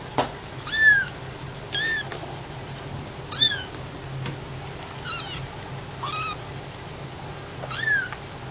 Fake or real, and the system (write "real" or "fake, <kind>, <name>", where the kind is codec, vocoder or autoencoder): real